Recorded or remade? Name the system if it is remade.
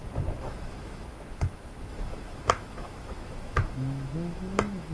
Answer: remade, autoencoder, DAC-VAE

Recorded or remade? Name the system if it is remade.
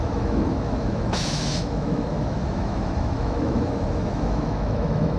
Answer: remade, autoencoder, DAC-VAE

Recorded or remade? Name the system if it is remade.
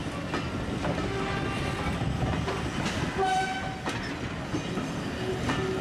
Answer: recorded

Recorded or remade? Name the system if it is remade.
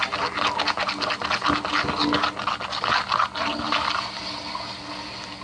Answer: recorded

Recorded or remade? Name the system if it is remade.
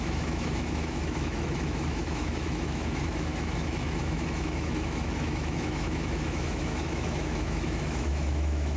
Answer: remade, autoencoder, DAC-VAE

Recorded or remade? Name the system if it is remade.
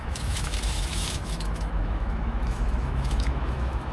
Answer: remade, autoencoder, DAC-VAE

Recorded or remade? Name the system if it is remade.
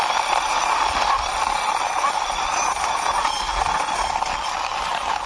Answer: recorded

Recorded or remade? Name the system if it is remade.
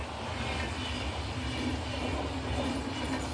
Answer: recorded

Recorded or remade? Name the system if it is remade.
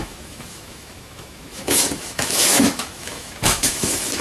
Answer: remade, autoencoder, DAC-VAE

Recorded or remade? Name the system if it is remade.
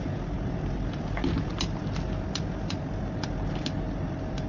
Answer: recorded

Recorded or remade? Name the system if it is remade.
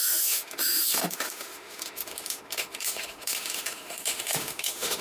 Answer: remade, autoencoder, DAC-VAE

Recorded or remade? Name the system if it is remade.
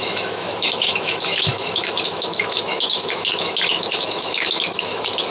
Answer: remade, autoencoder, DAC-VAE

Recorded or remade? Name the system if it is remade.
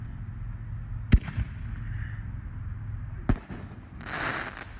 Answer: recorded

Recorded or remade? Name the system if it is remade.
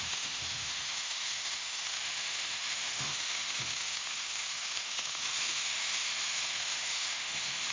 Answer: remade, autoencoder, DAC-VAE